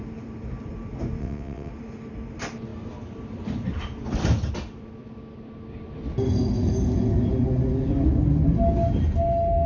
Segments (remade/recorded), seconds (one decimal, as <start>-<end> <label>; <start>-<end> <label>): 0.0-1.2 recorded; 1.2-1.7 remade; 1.7-9.7 recorded